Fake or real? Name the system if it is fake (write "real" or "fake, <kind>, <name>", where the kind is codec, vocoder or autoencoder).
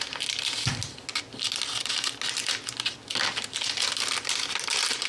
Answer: real